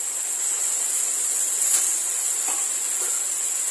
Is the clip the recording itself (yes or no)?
yes